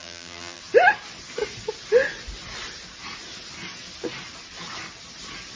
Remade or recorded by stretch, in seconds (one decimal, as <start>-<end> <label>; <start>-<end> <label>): 0.0-0.6 remade; 0.6-5.6 recorded